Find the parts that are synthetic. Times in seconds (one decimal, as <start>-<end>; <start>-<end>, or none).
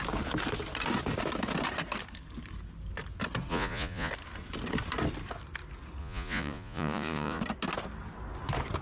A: 3.5-4.1; 6.0-7.4